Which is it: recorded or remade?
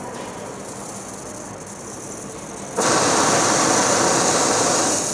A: recorded